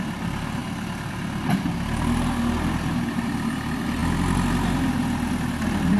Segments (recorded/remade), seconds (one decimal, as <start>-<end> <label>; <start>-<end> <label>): 0.0-0.6 recorded; 0.6-1.1 remade; 1.1-6.0 recorded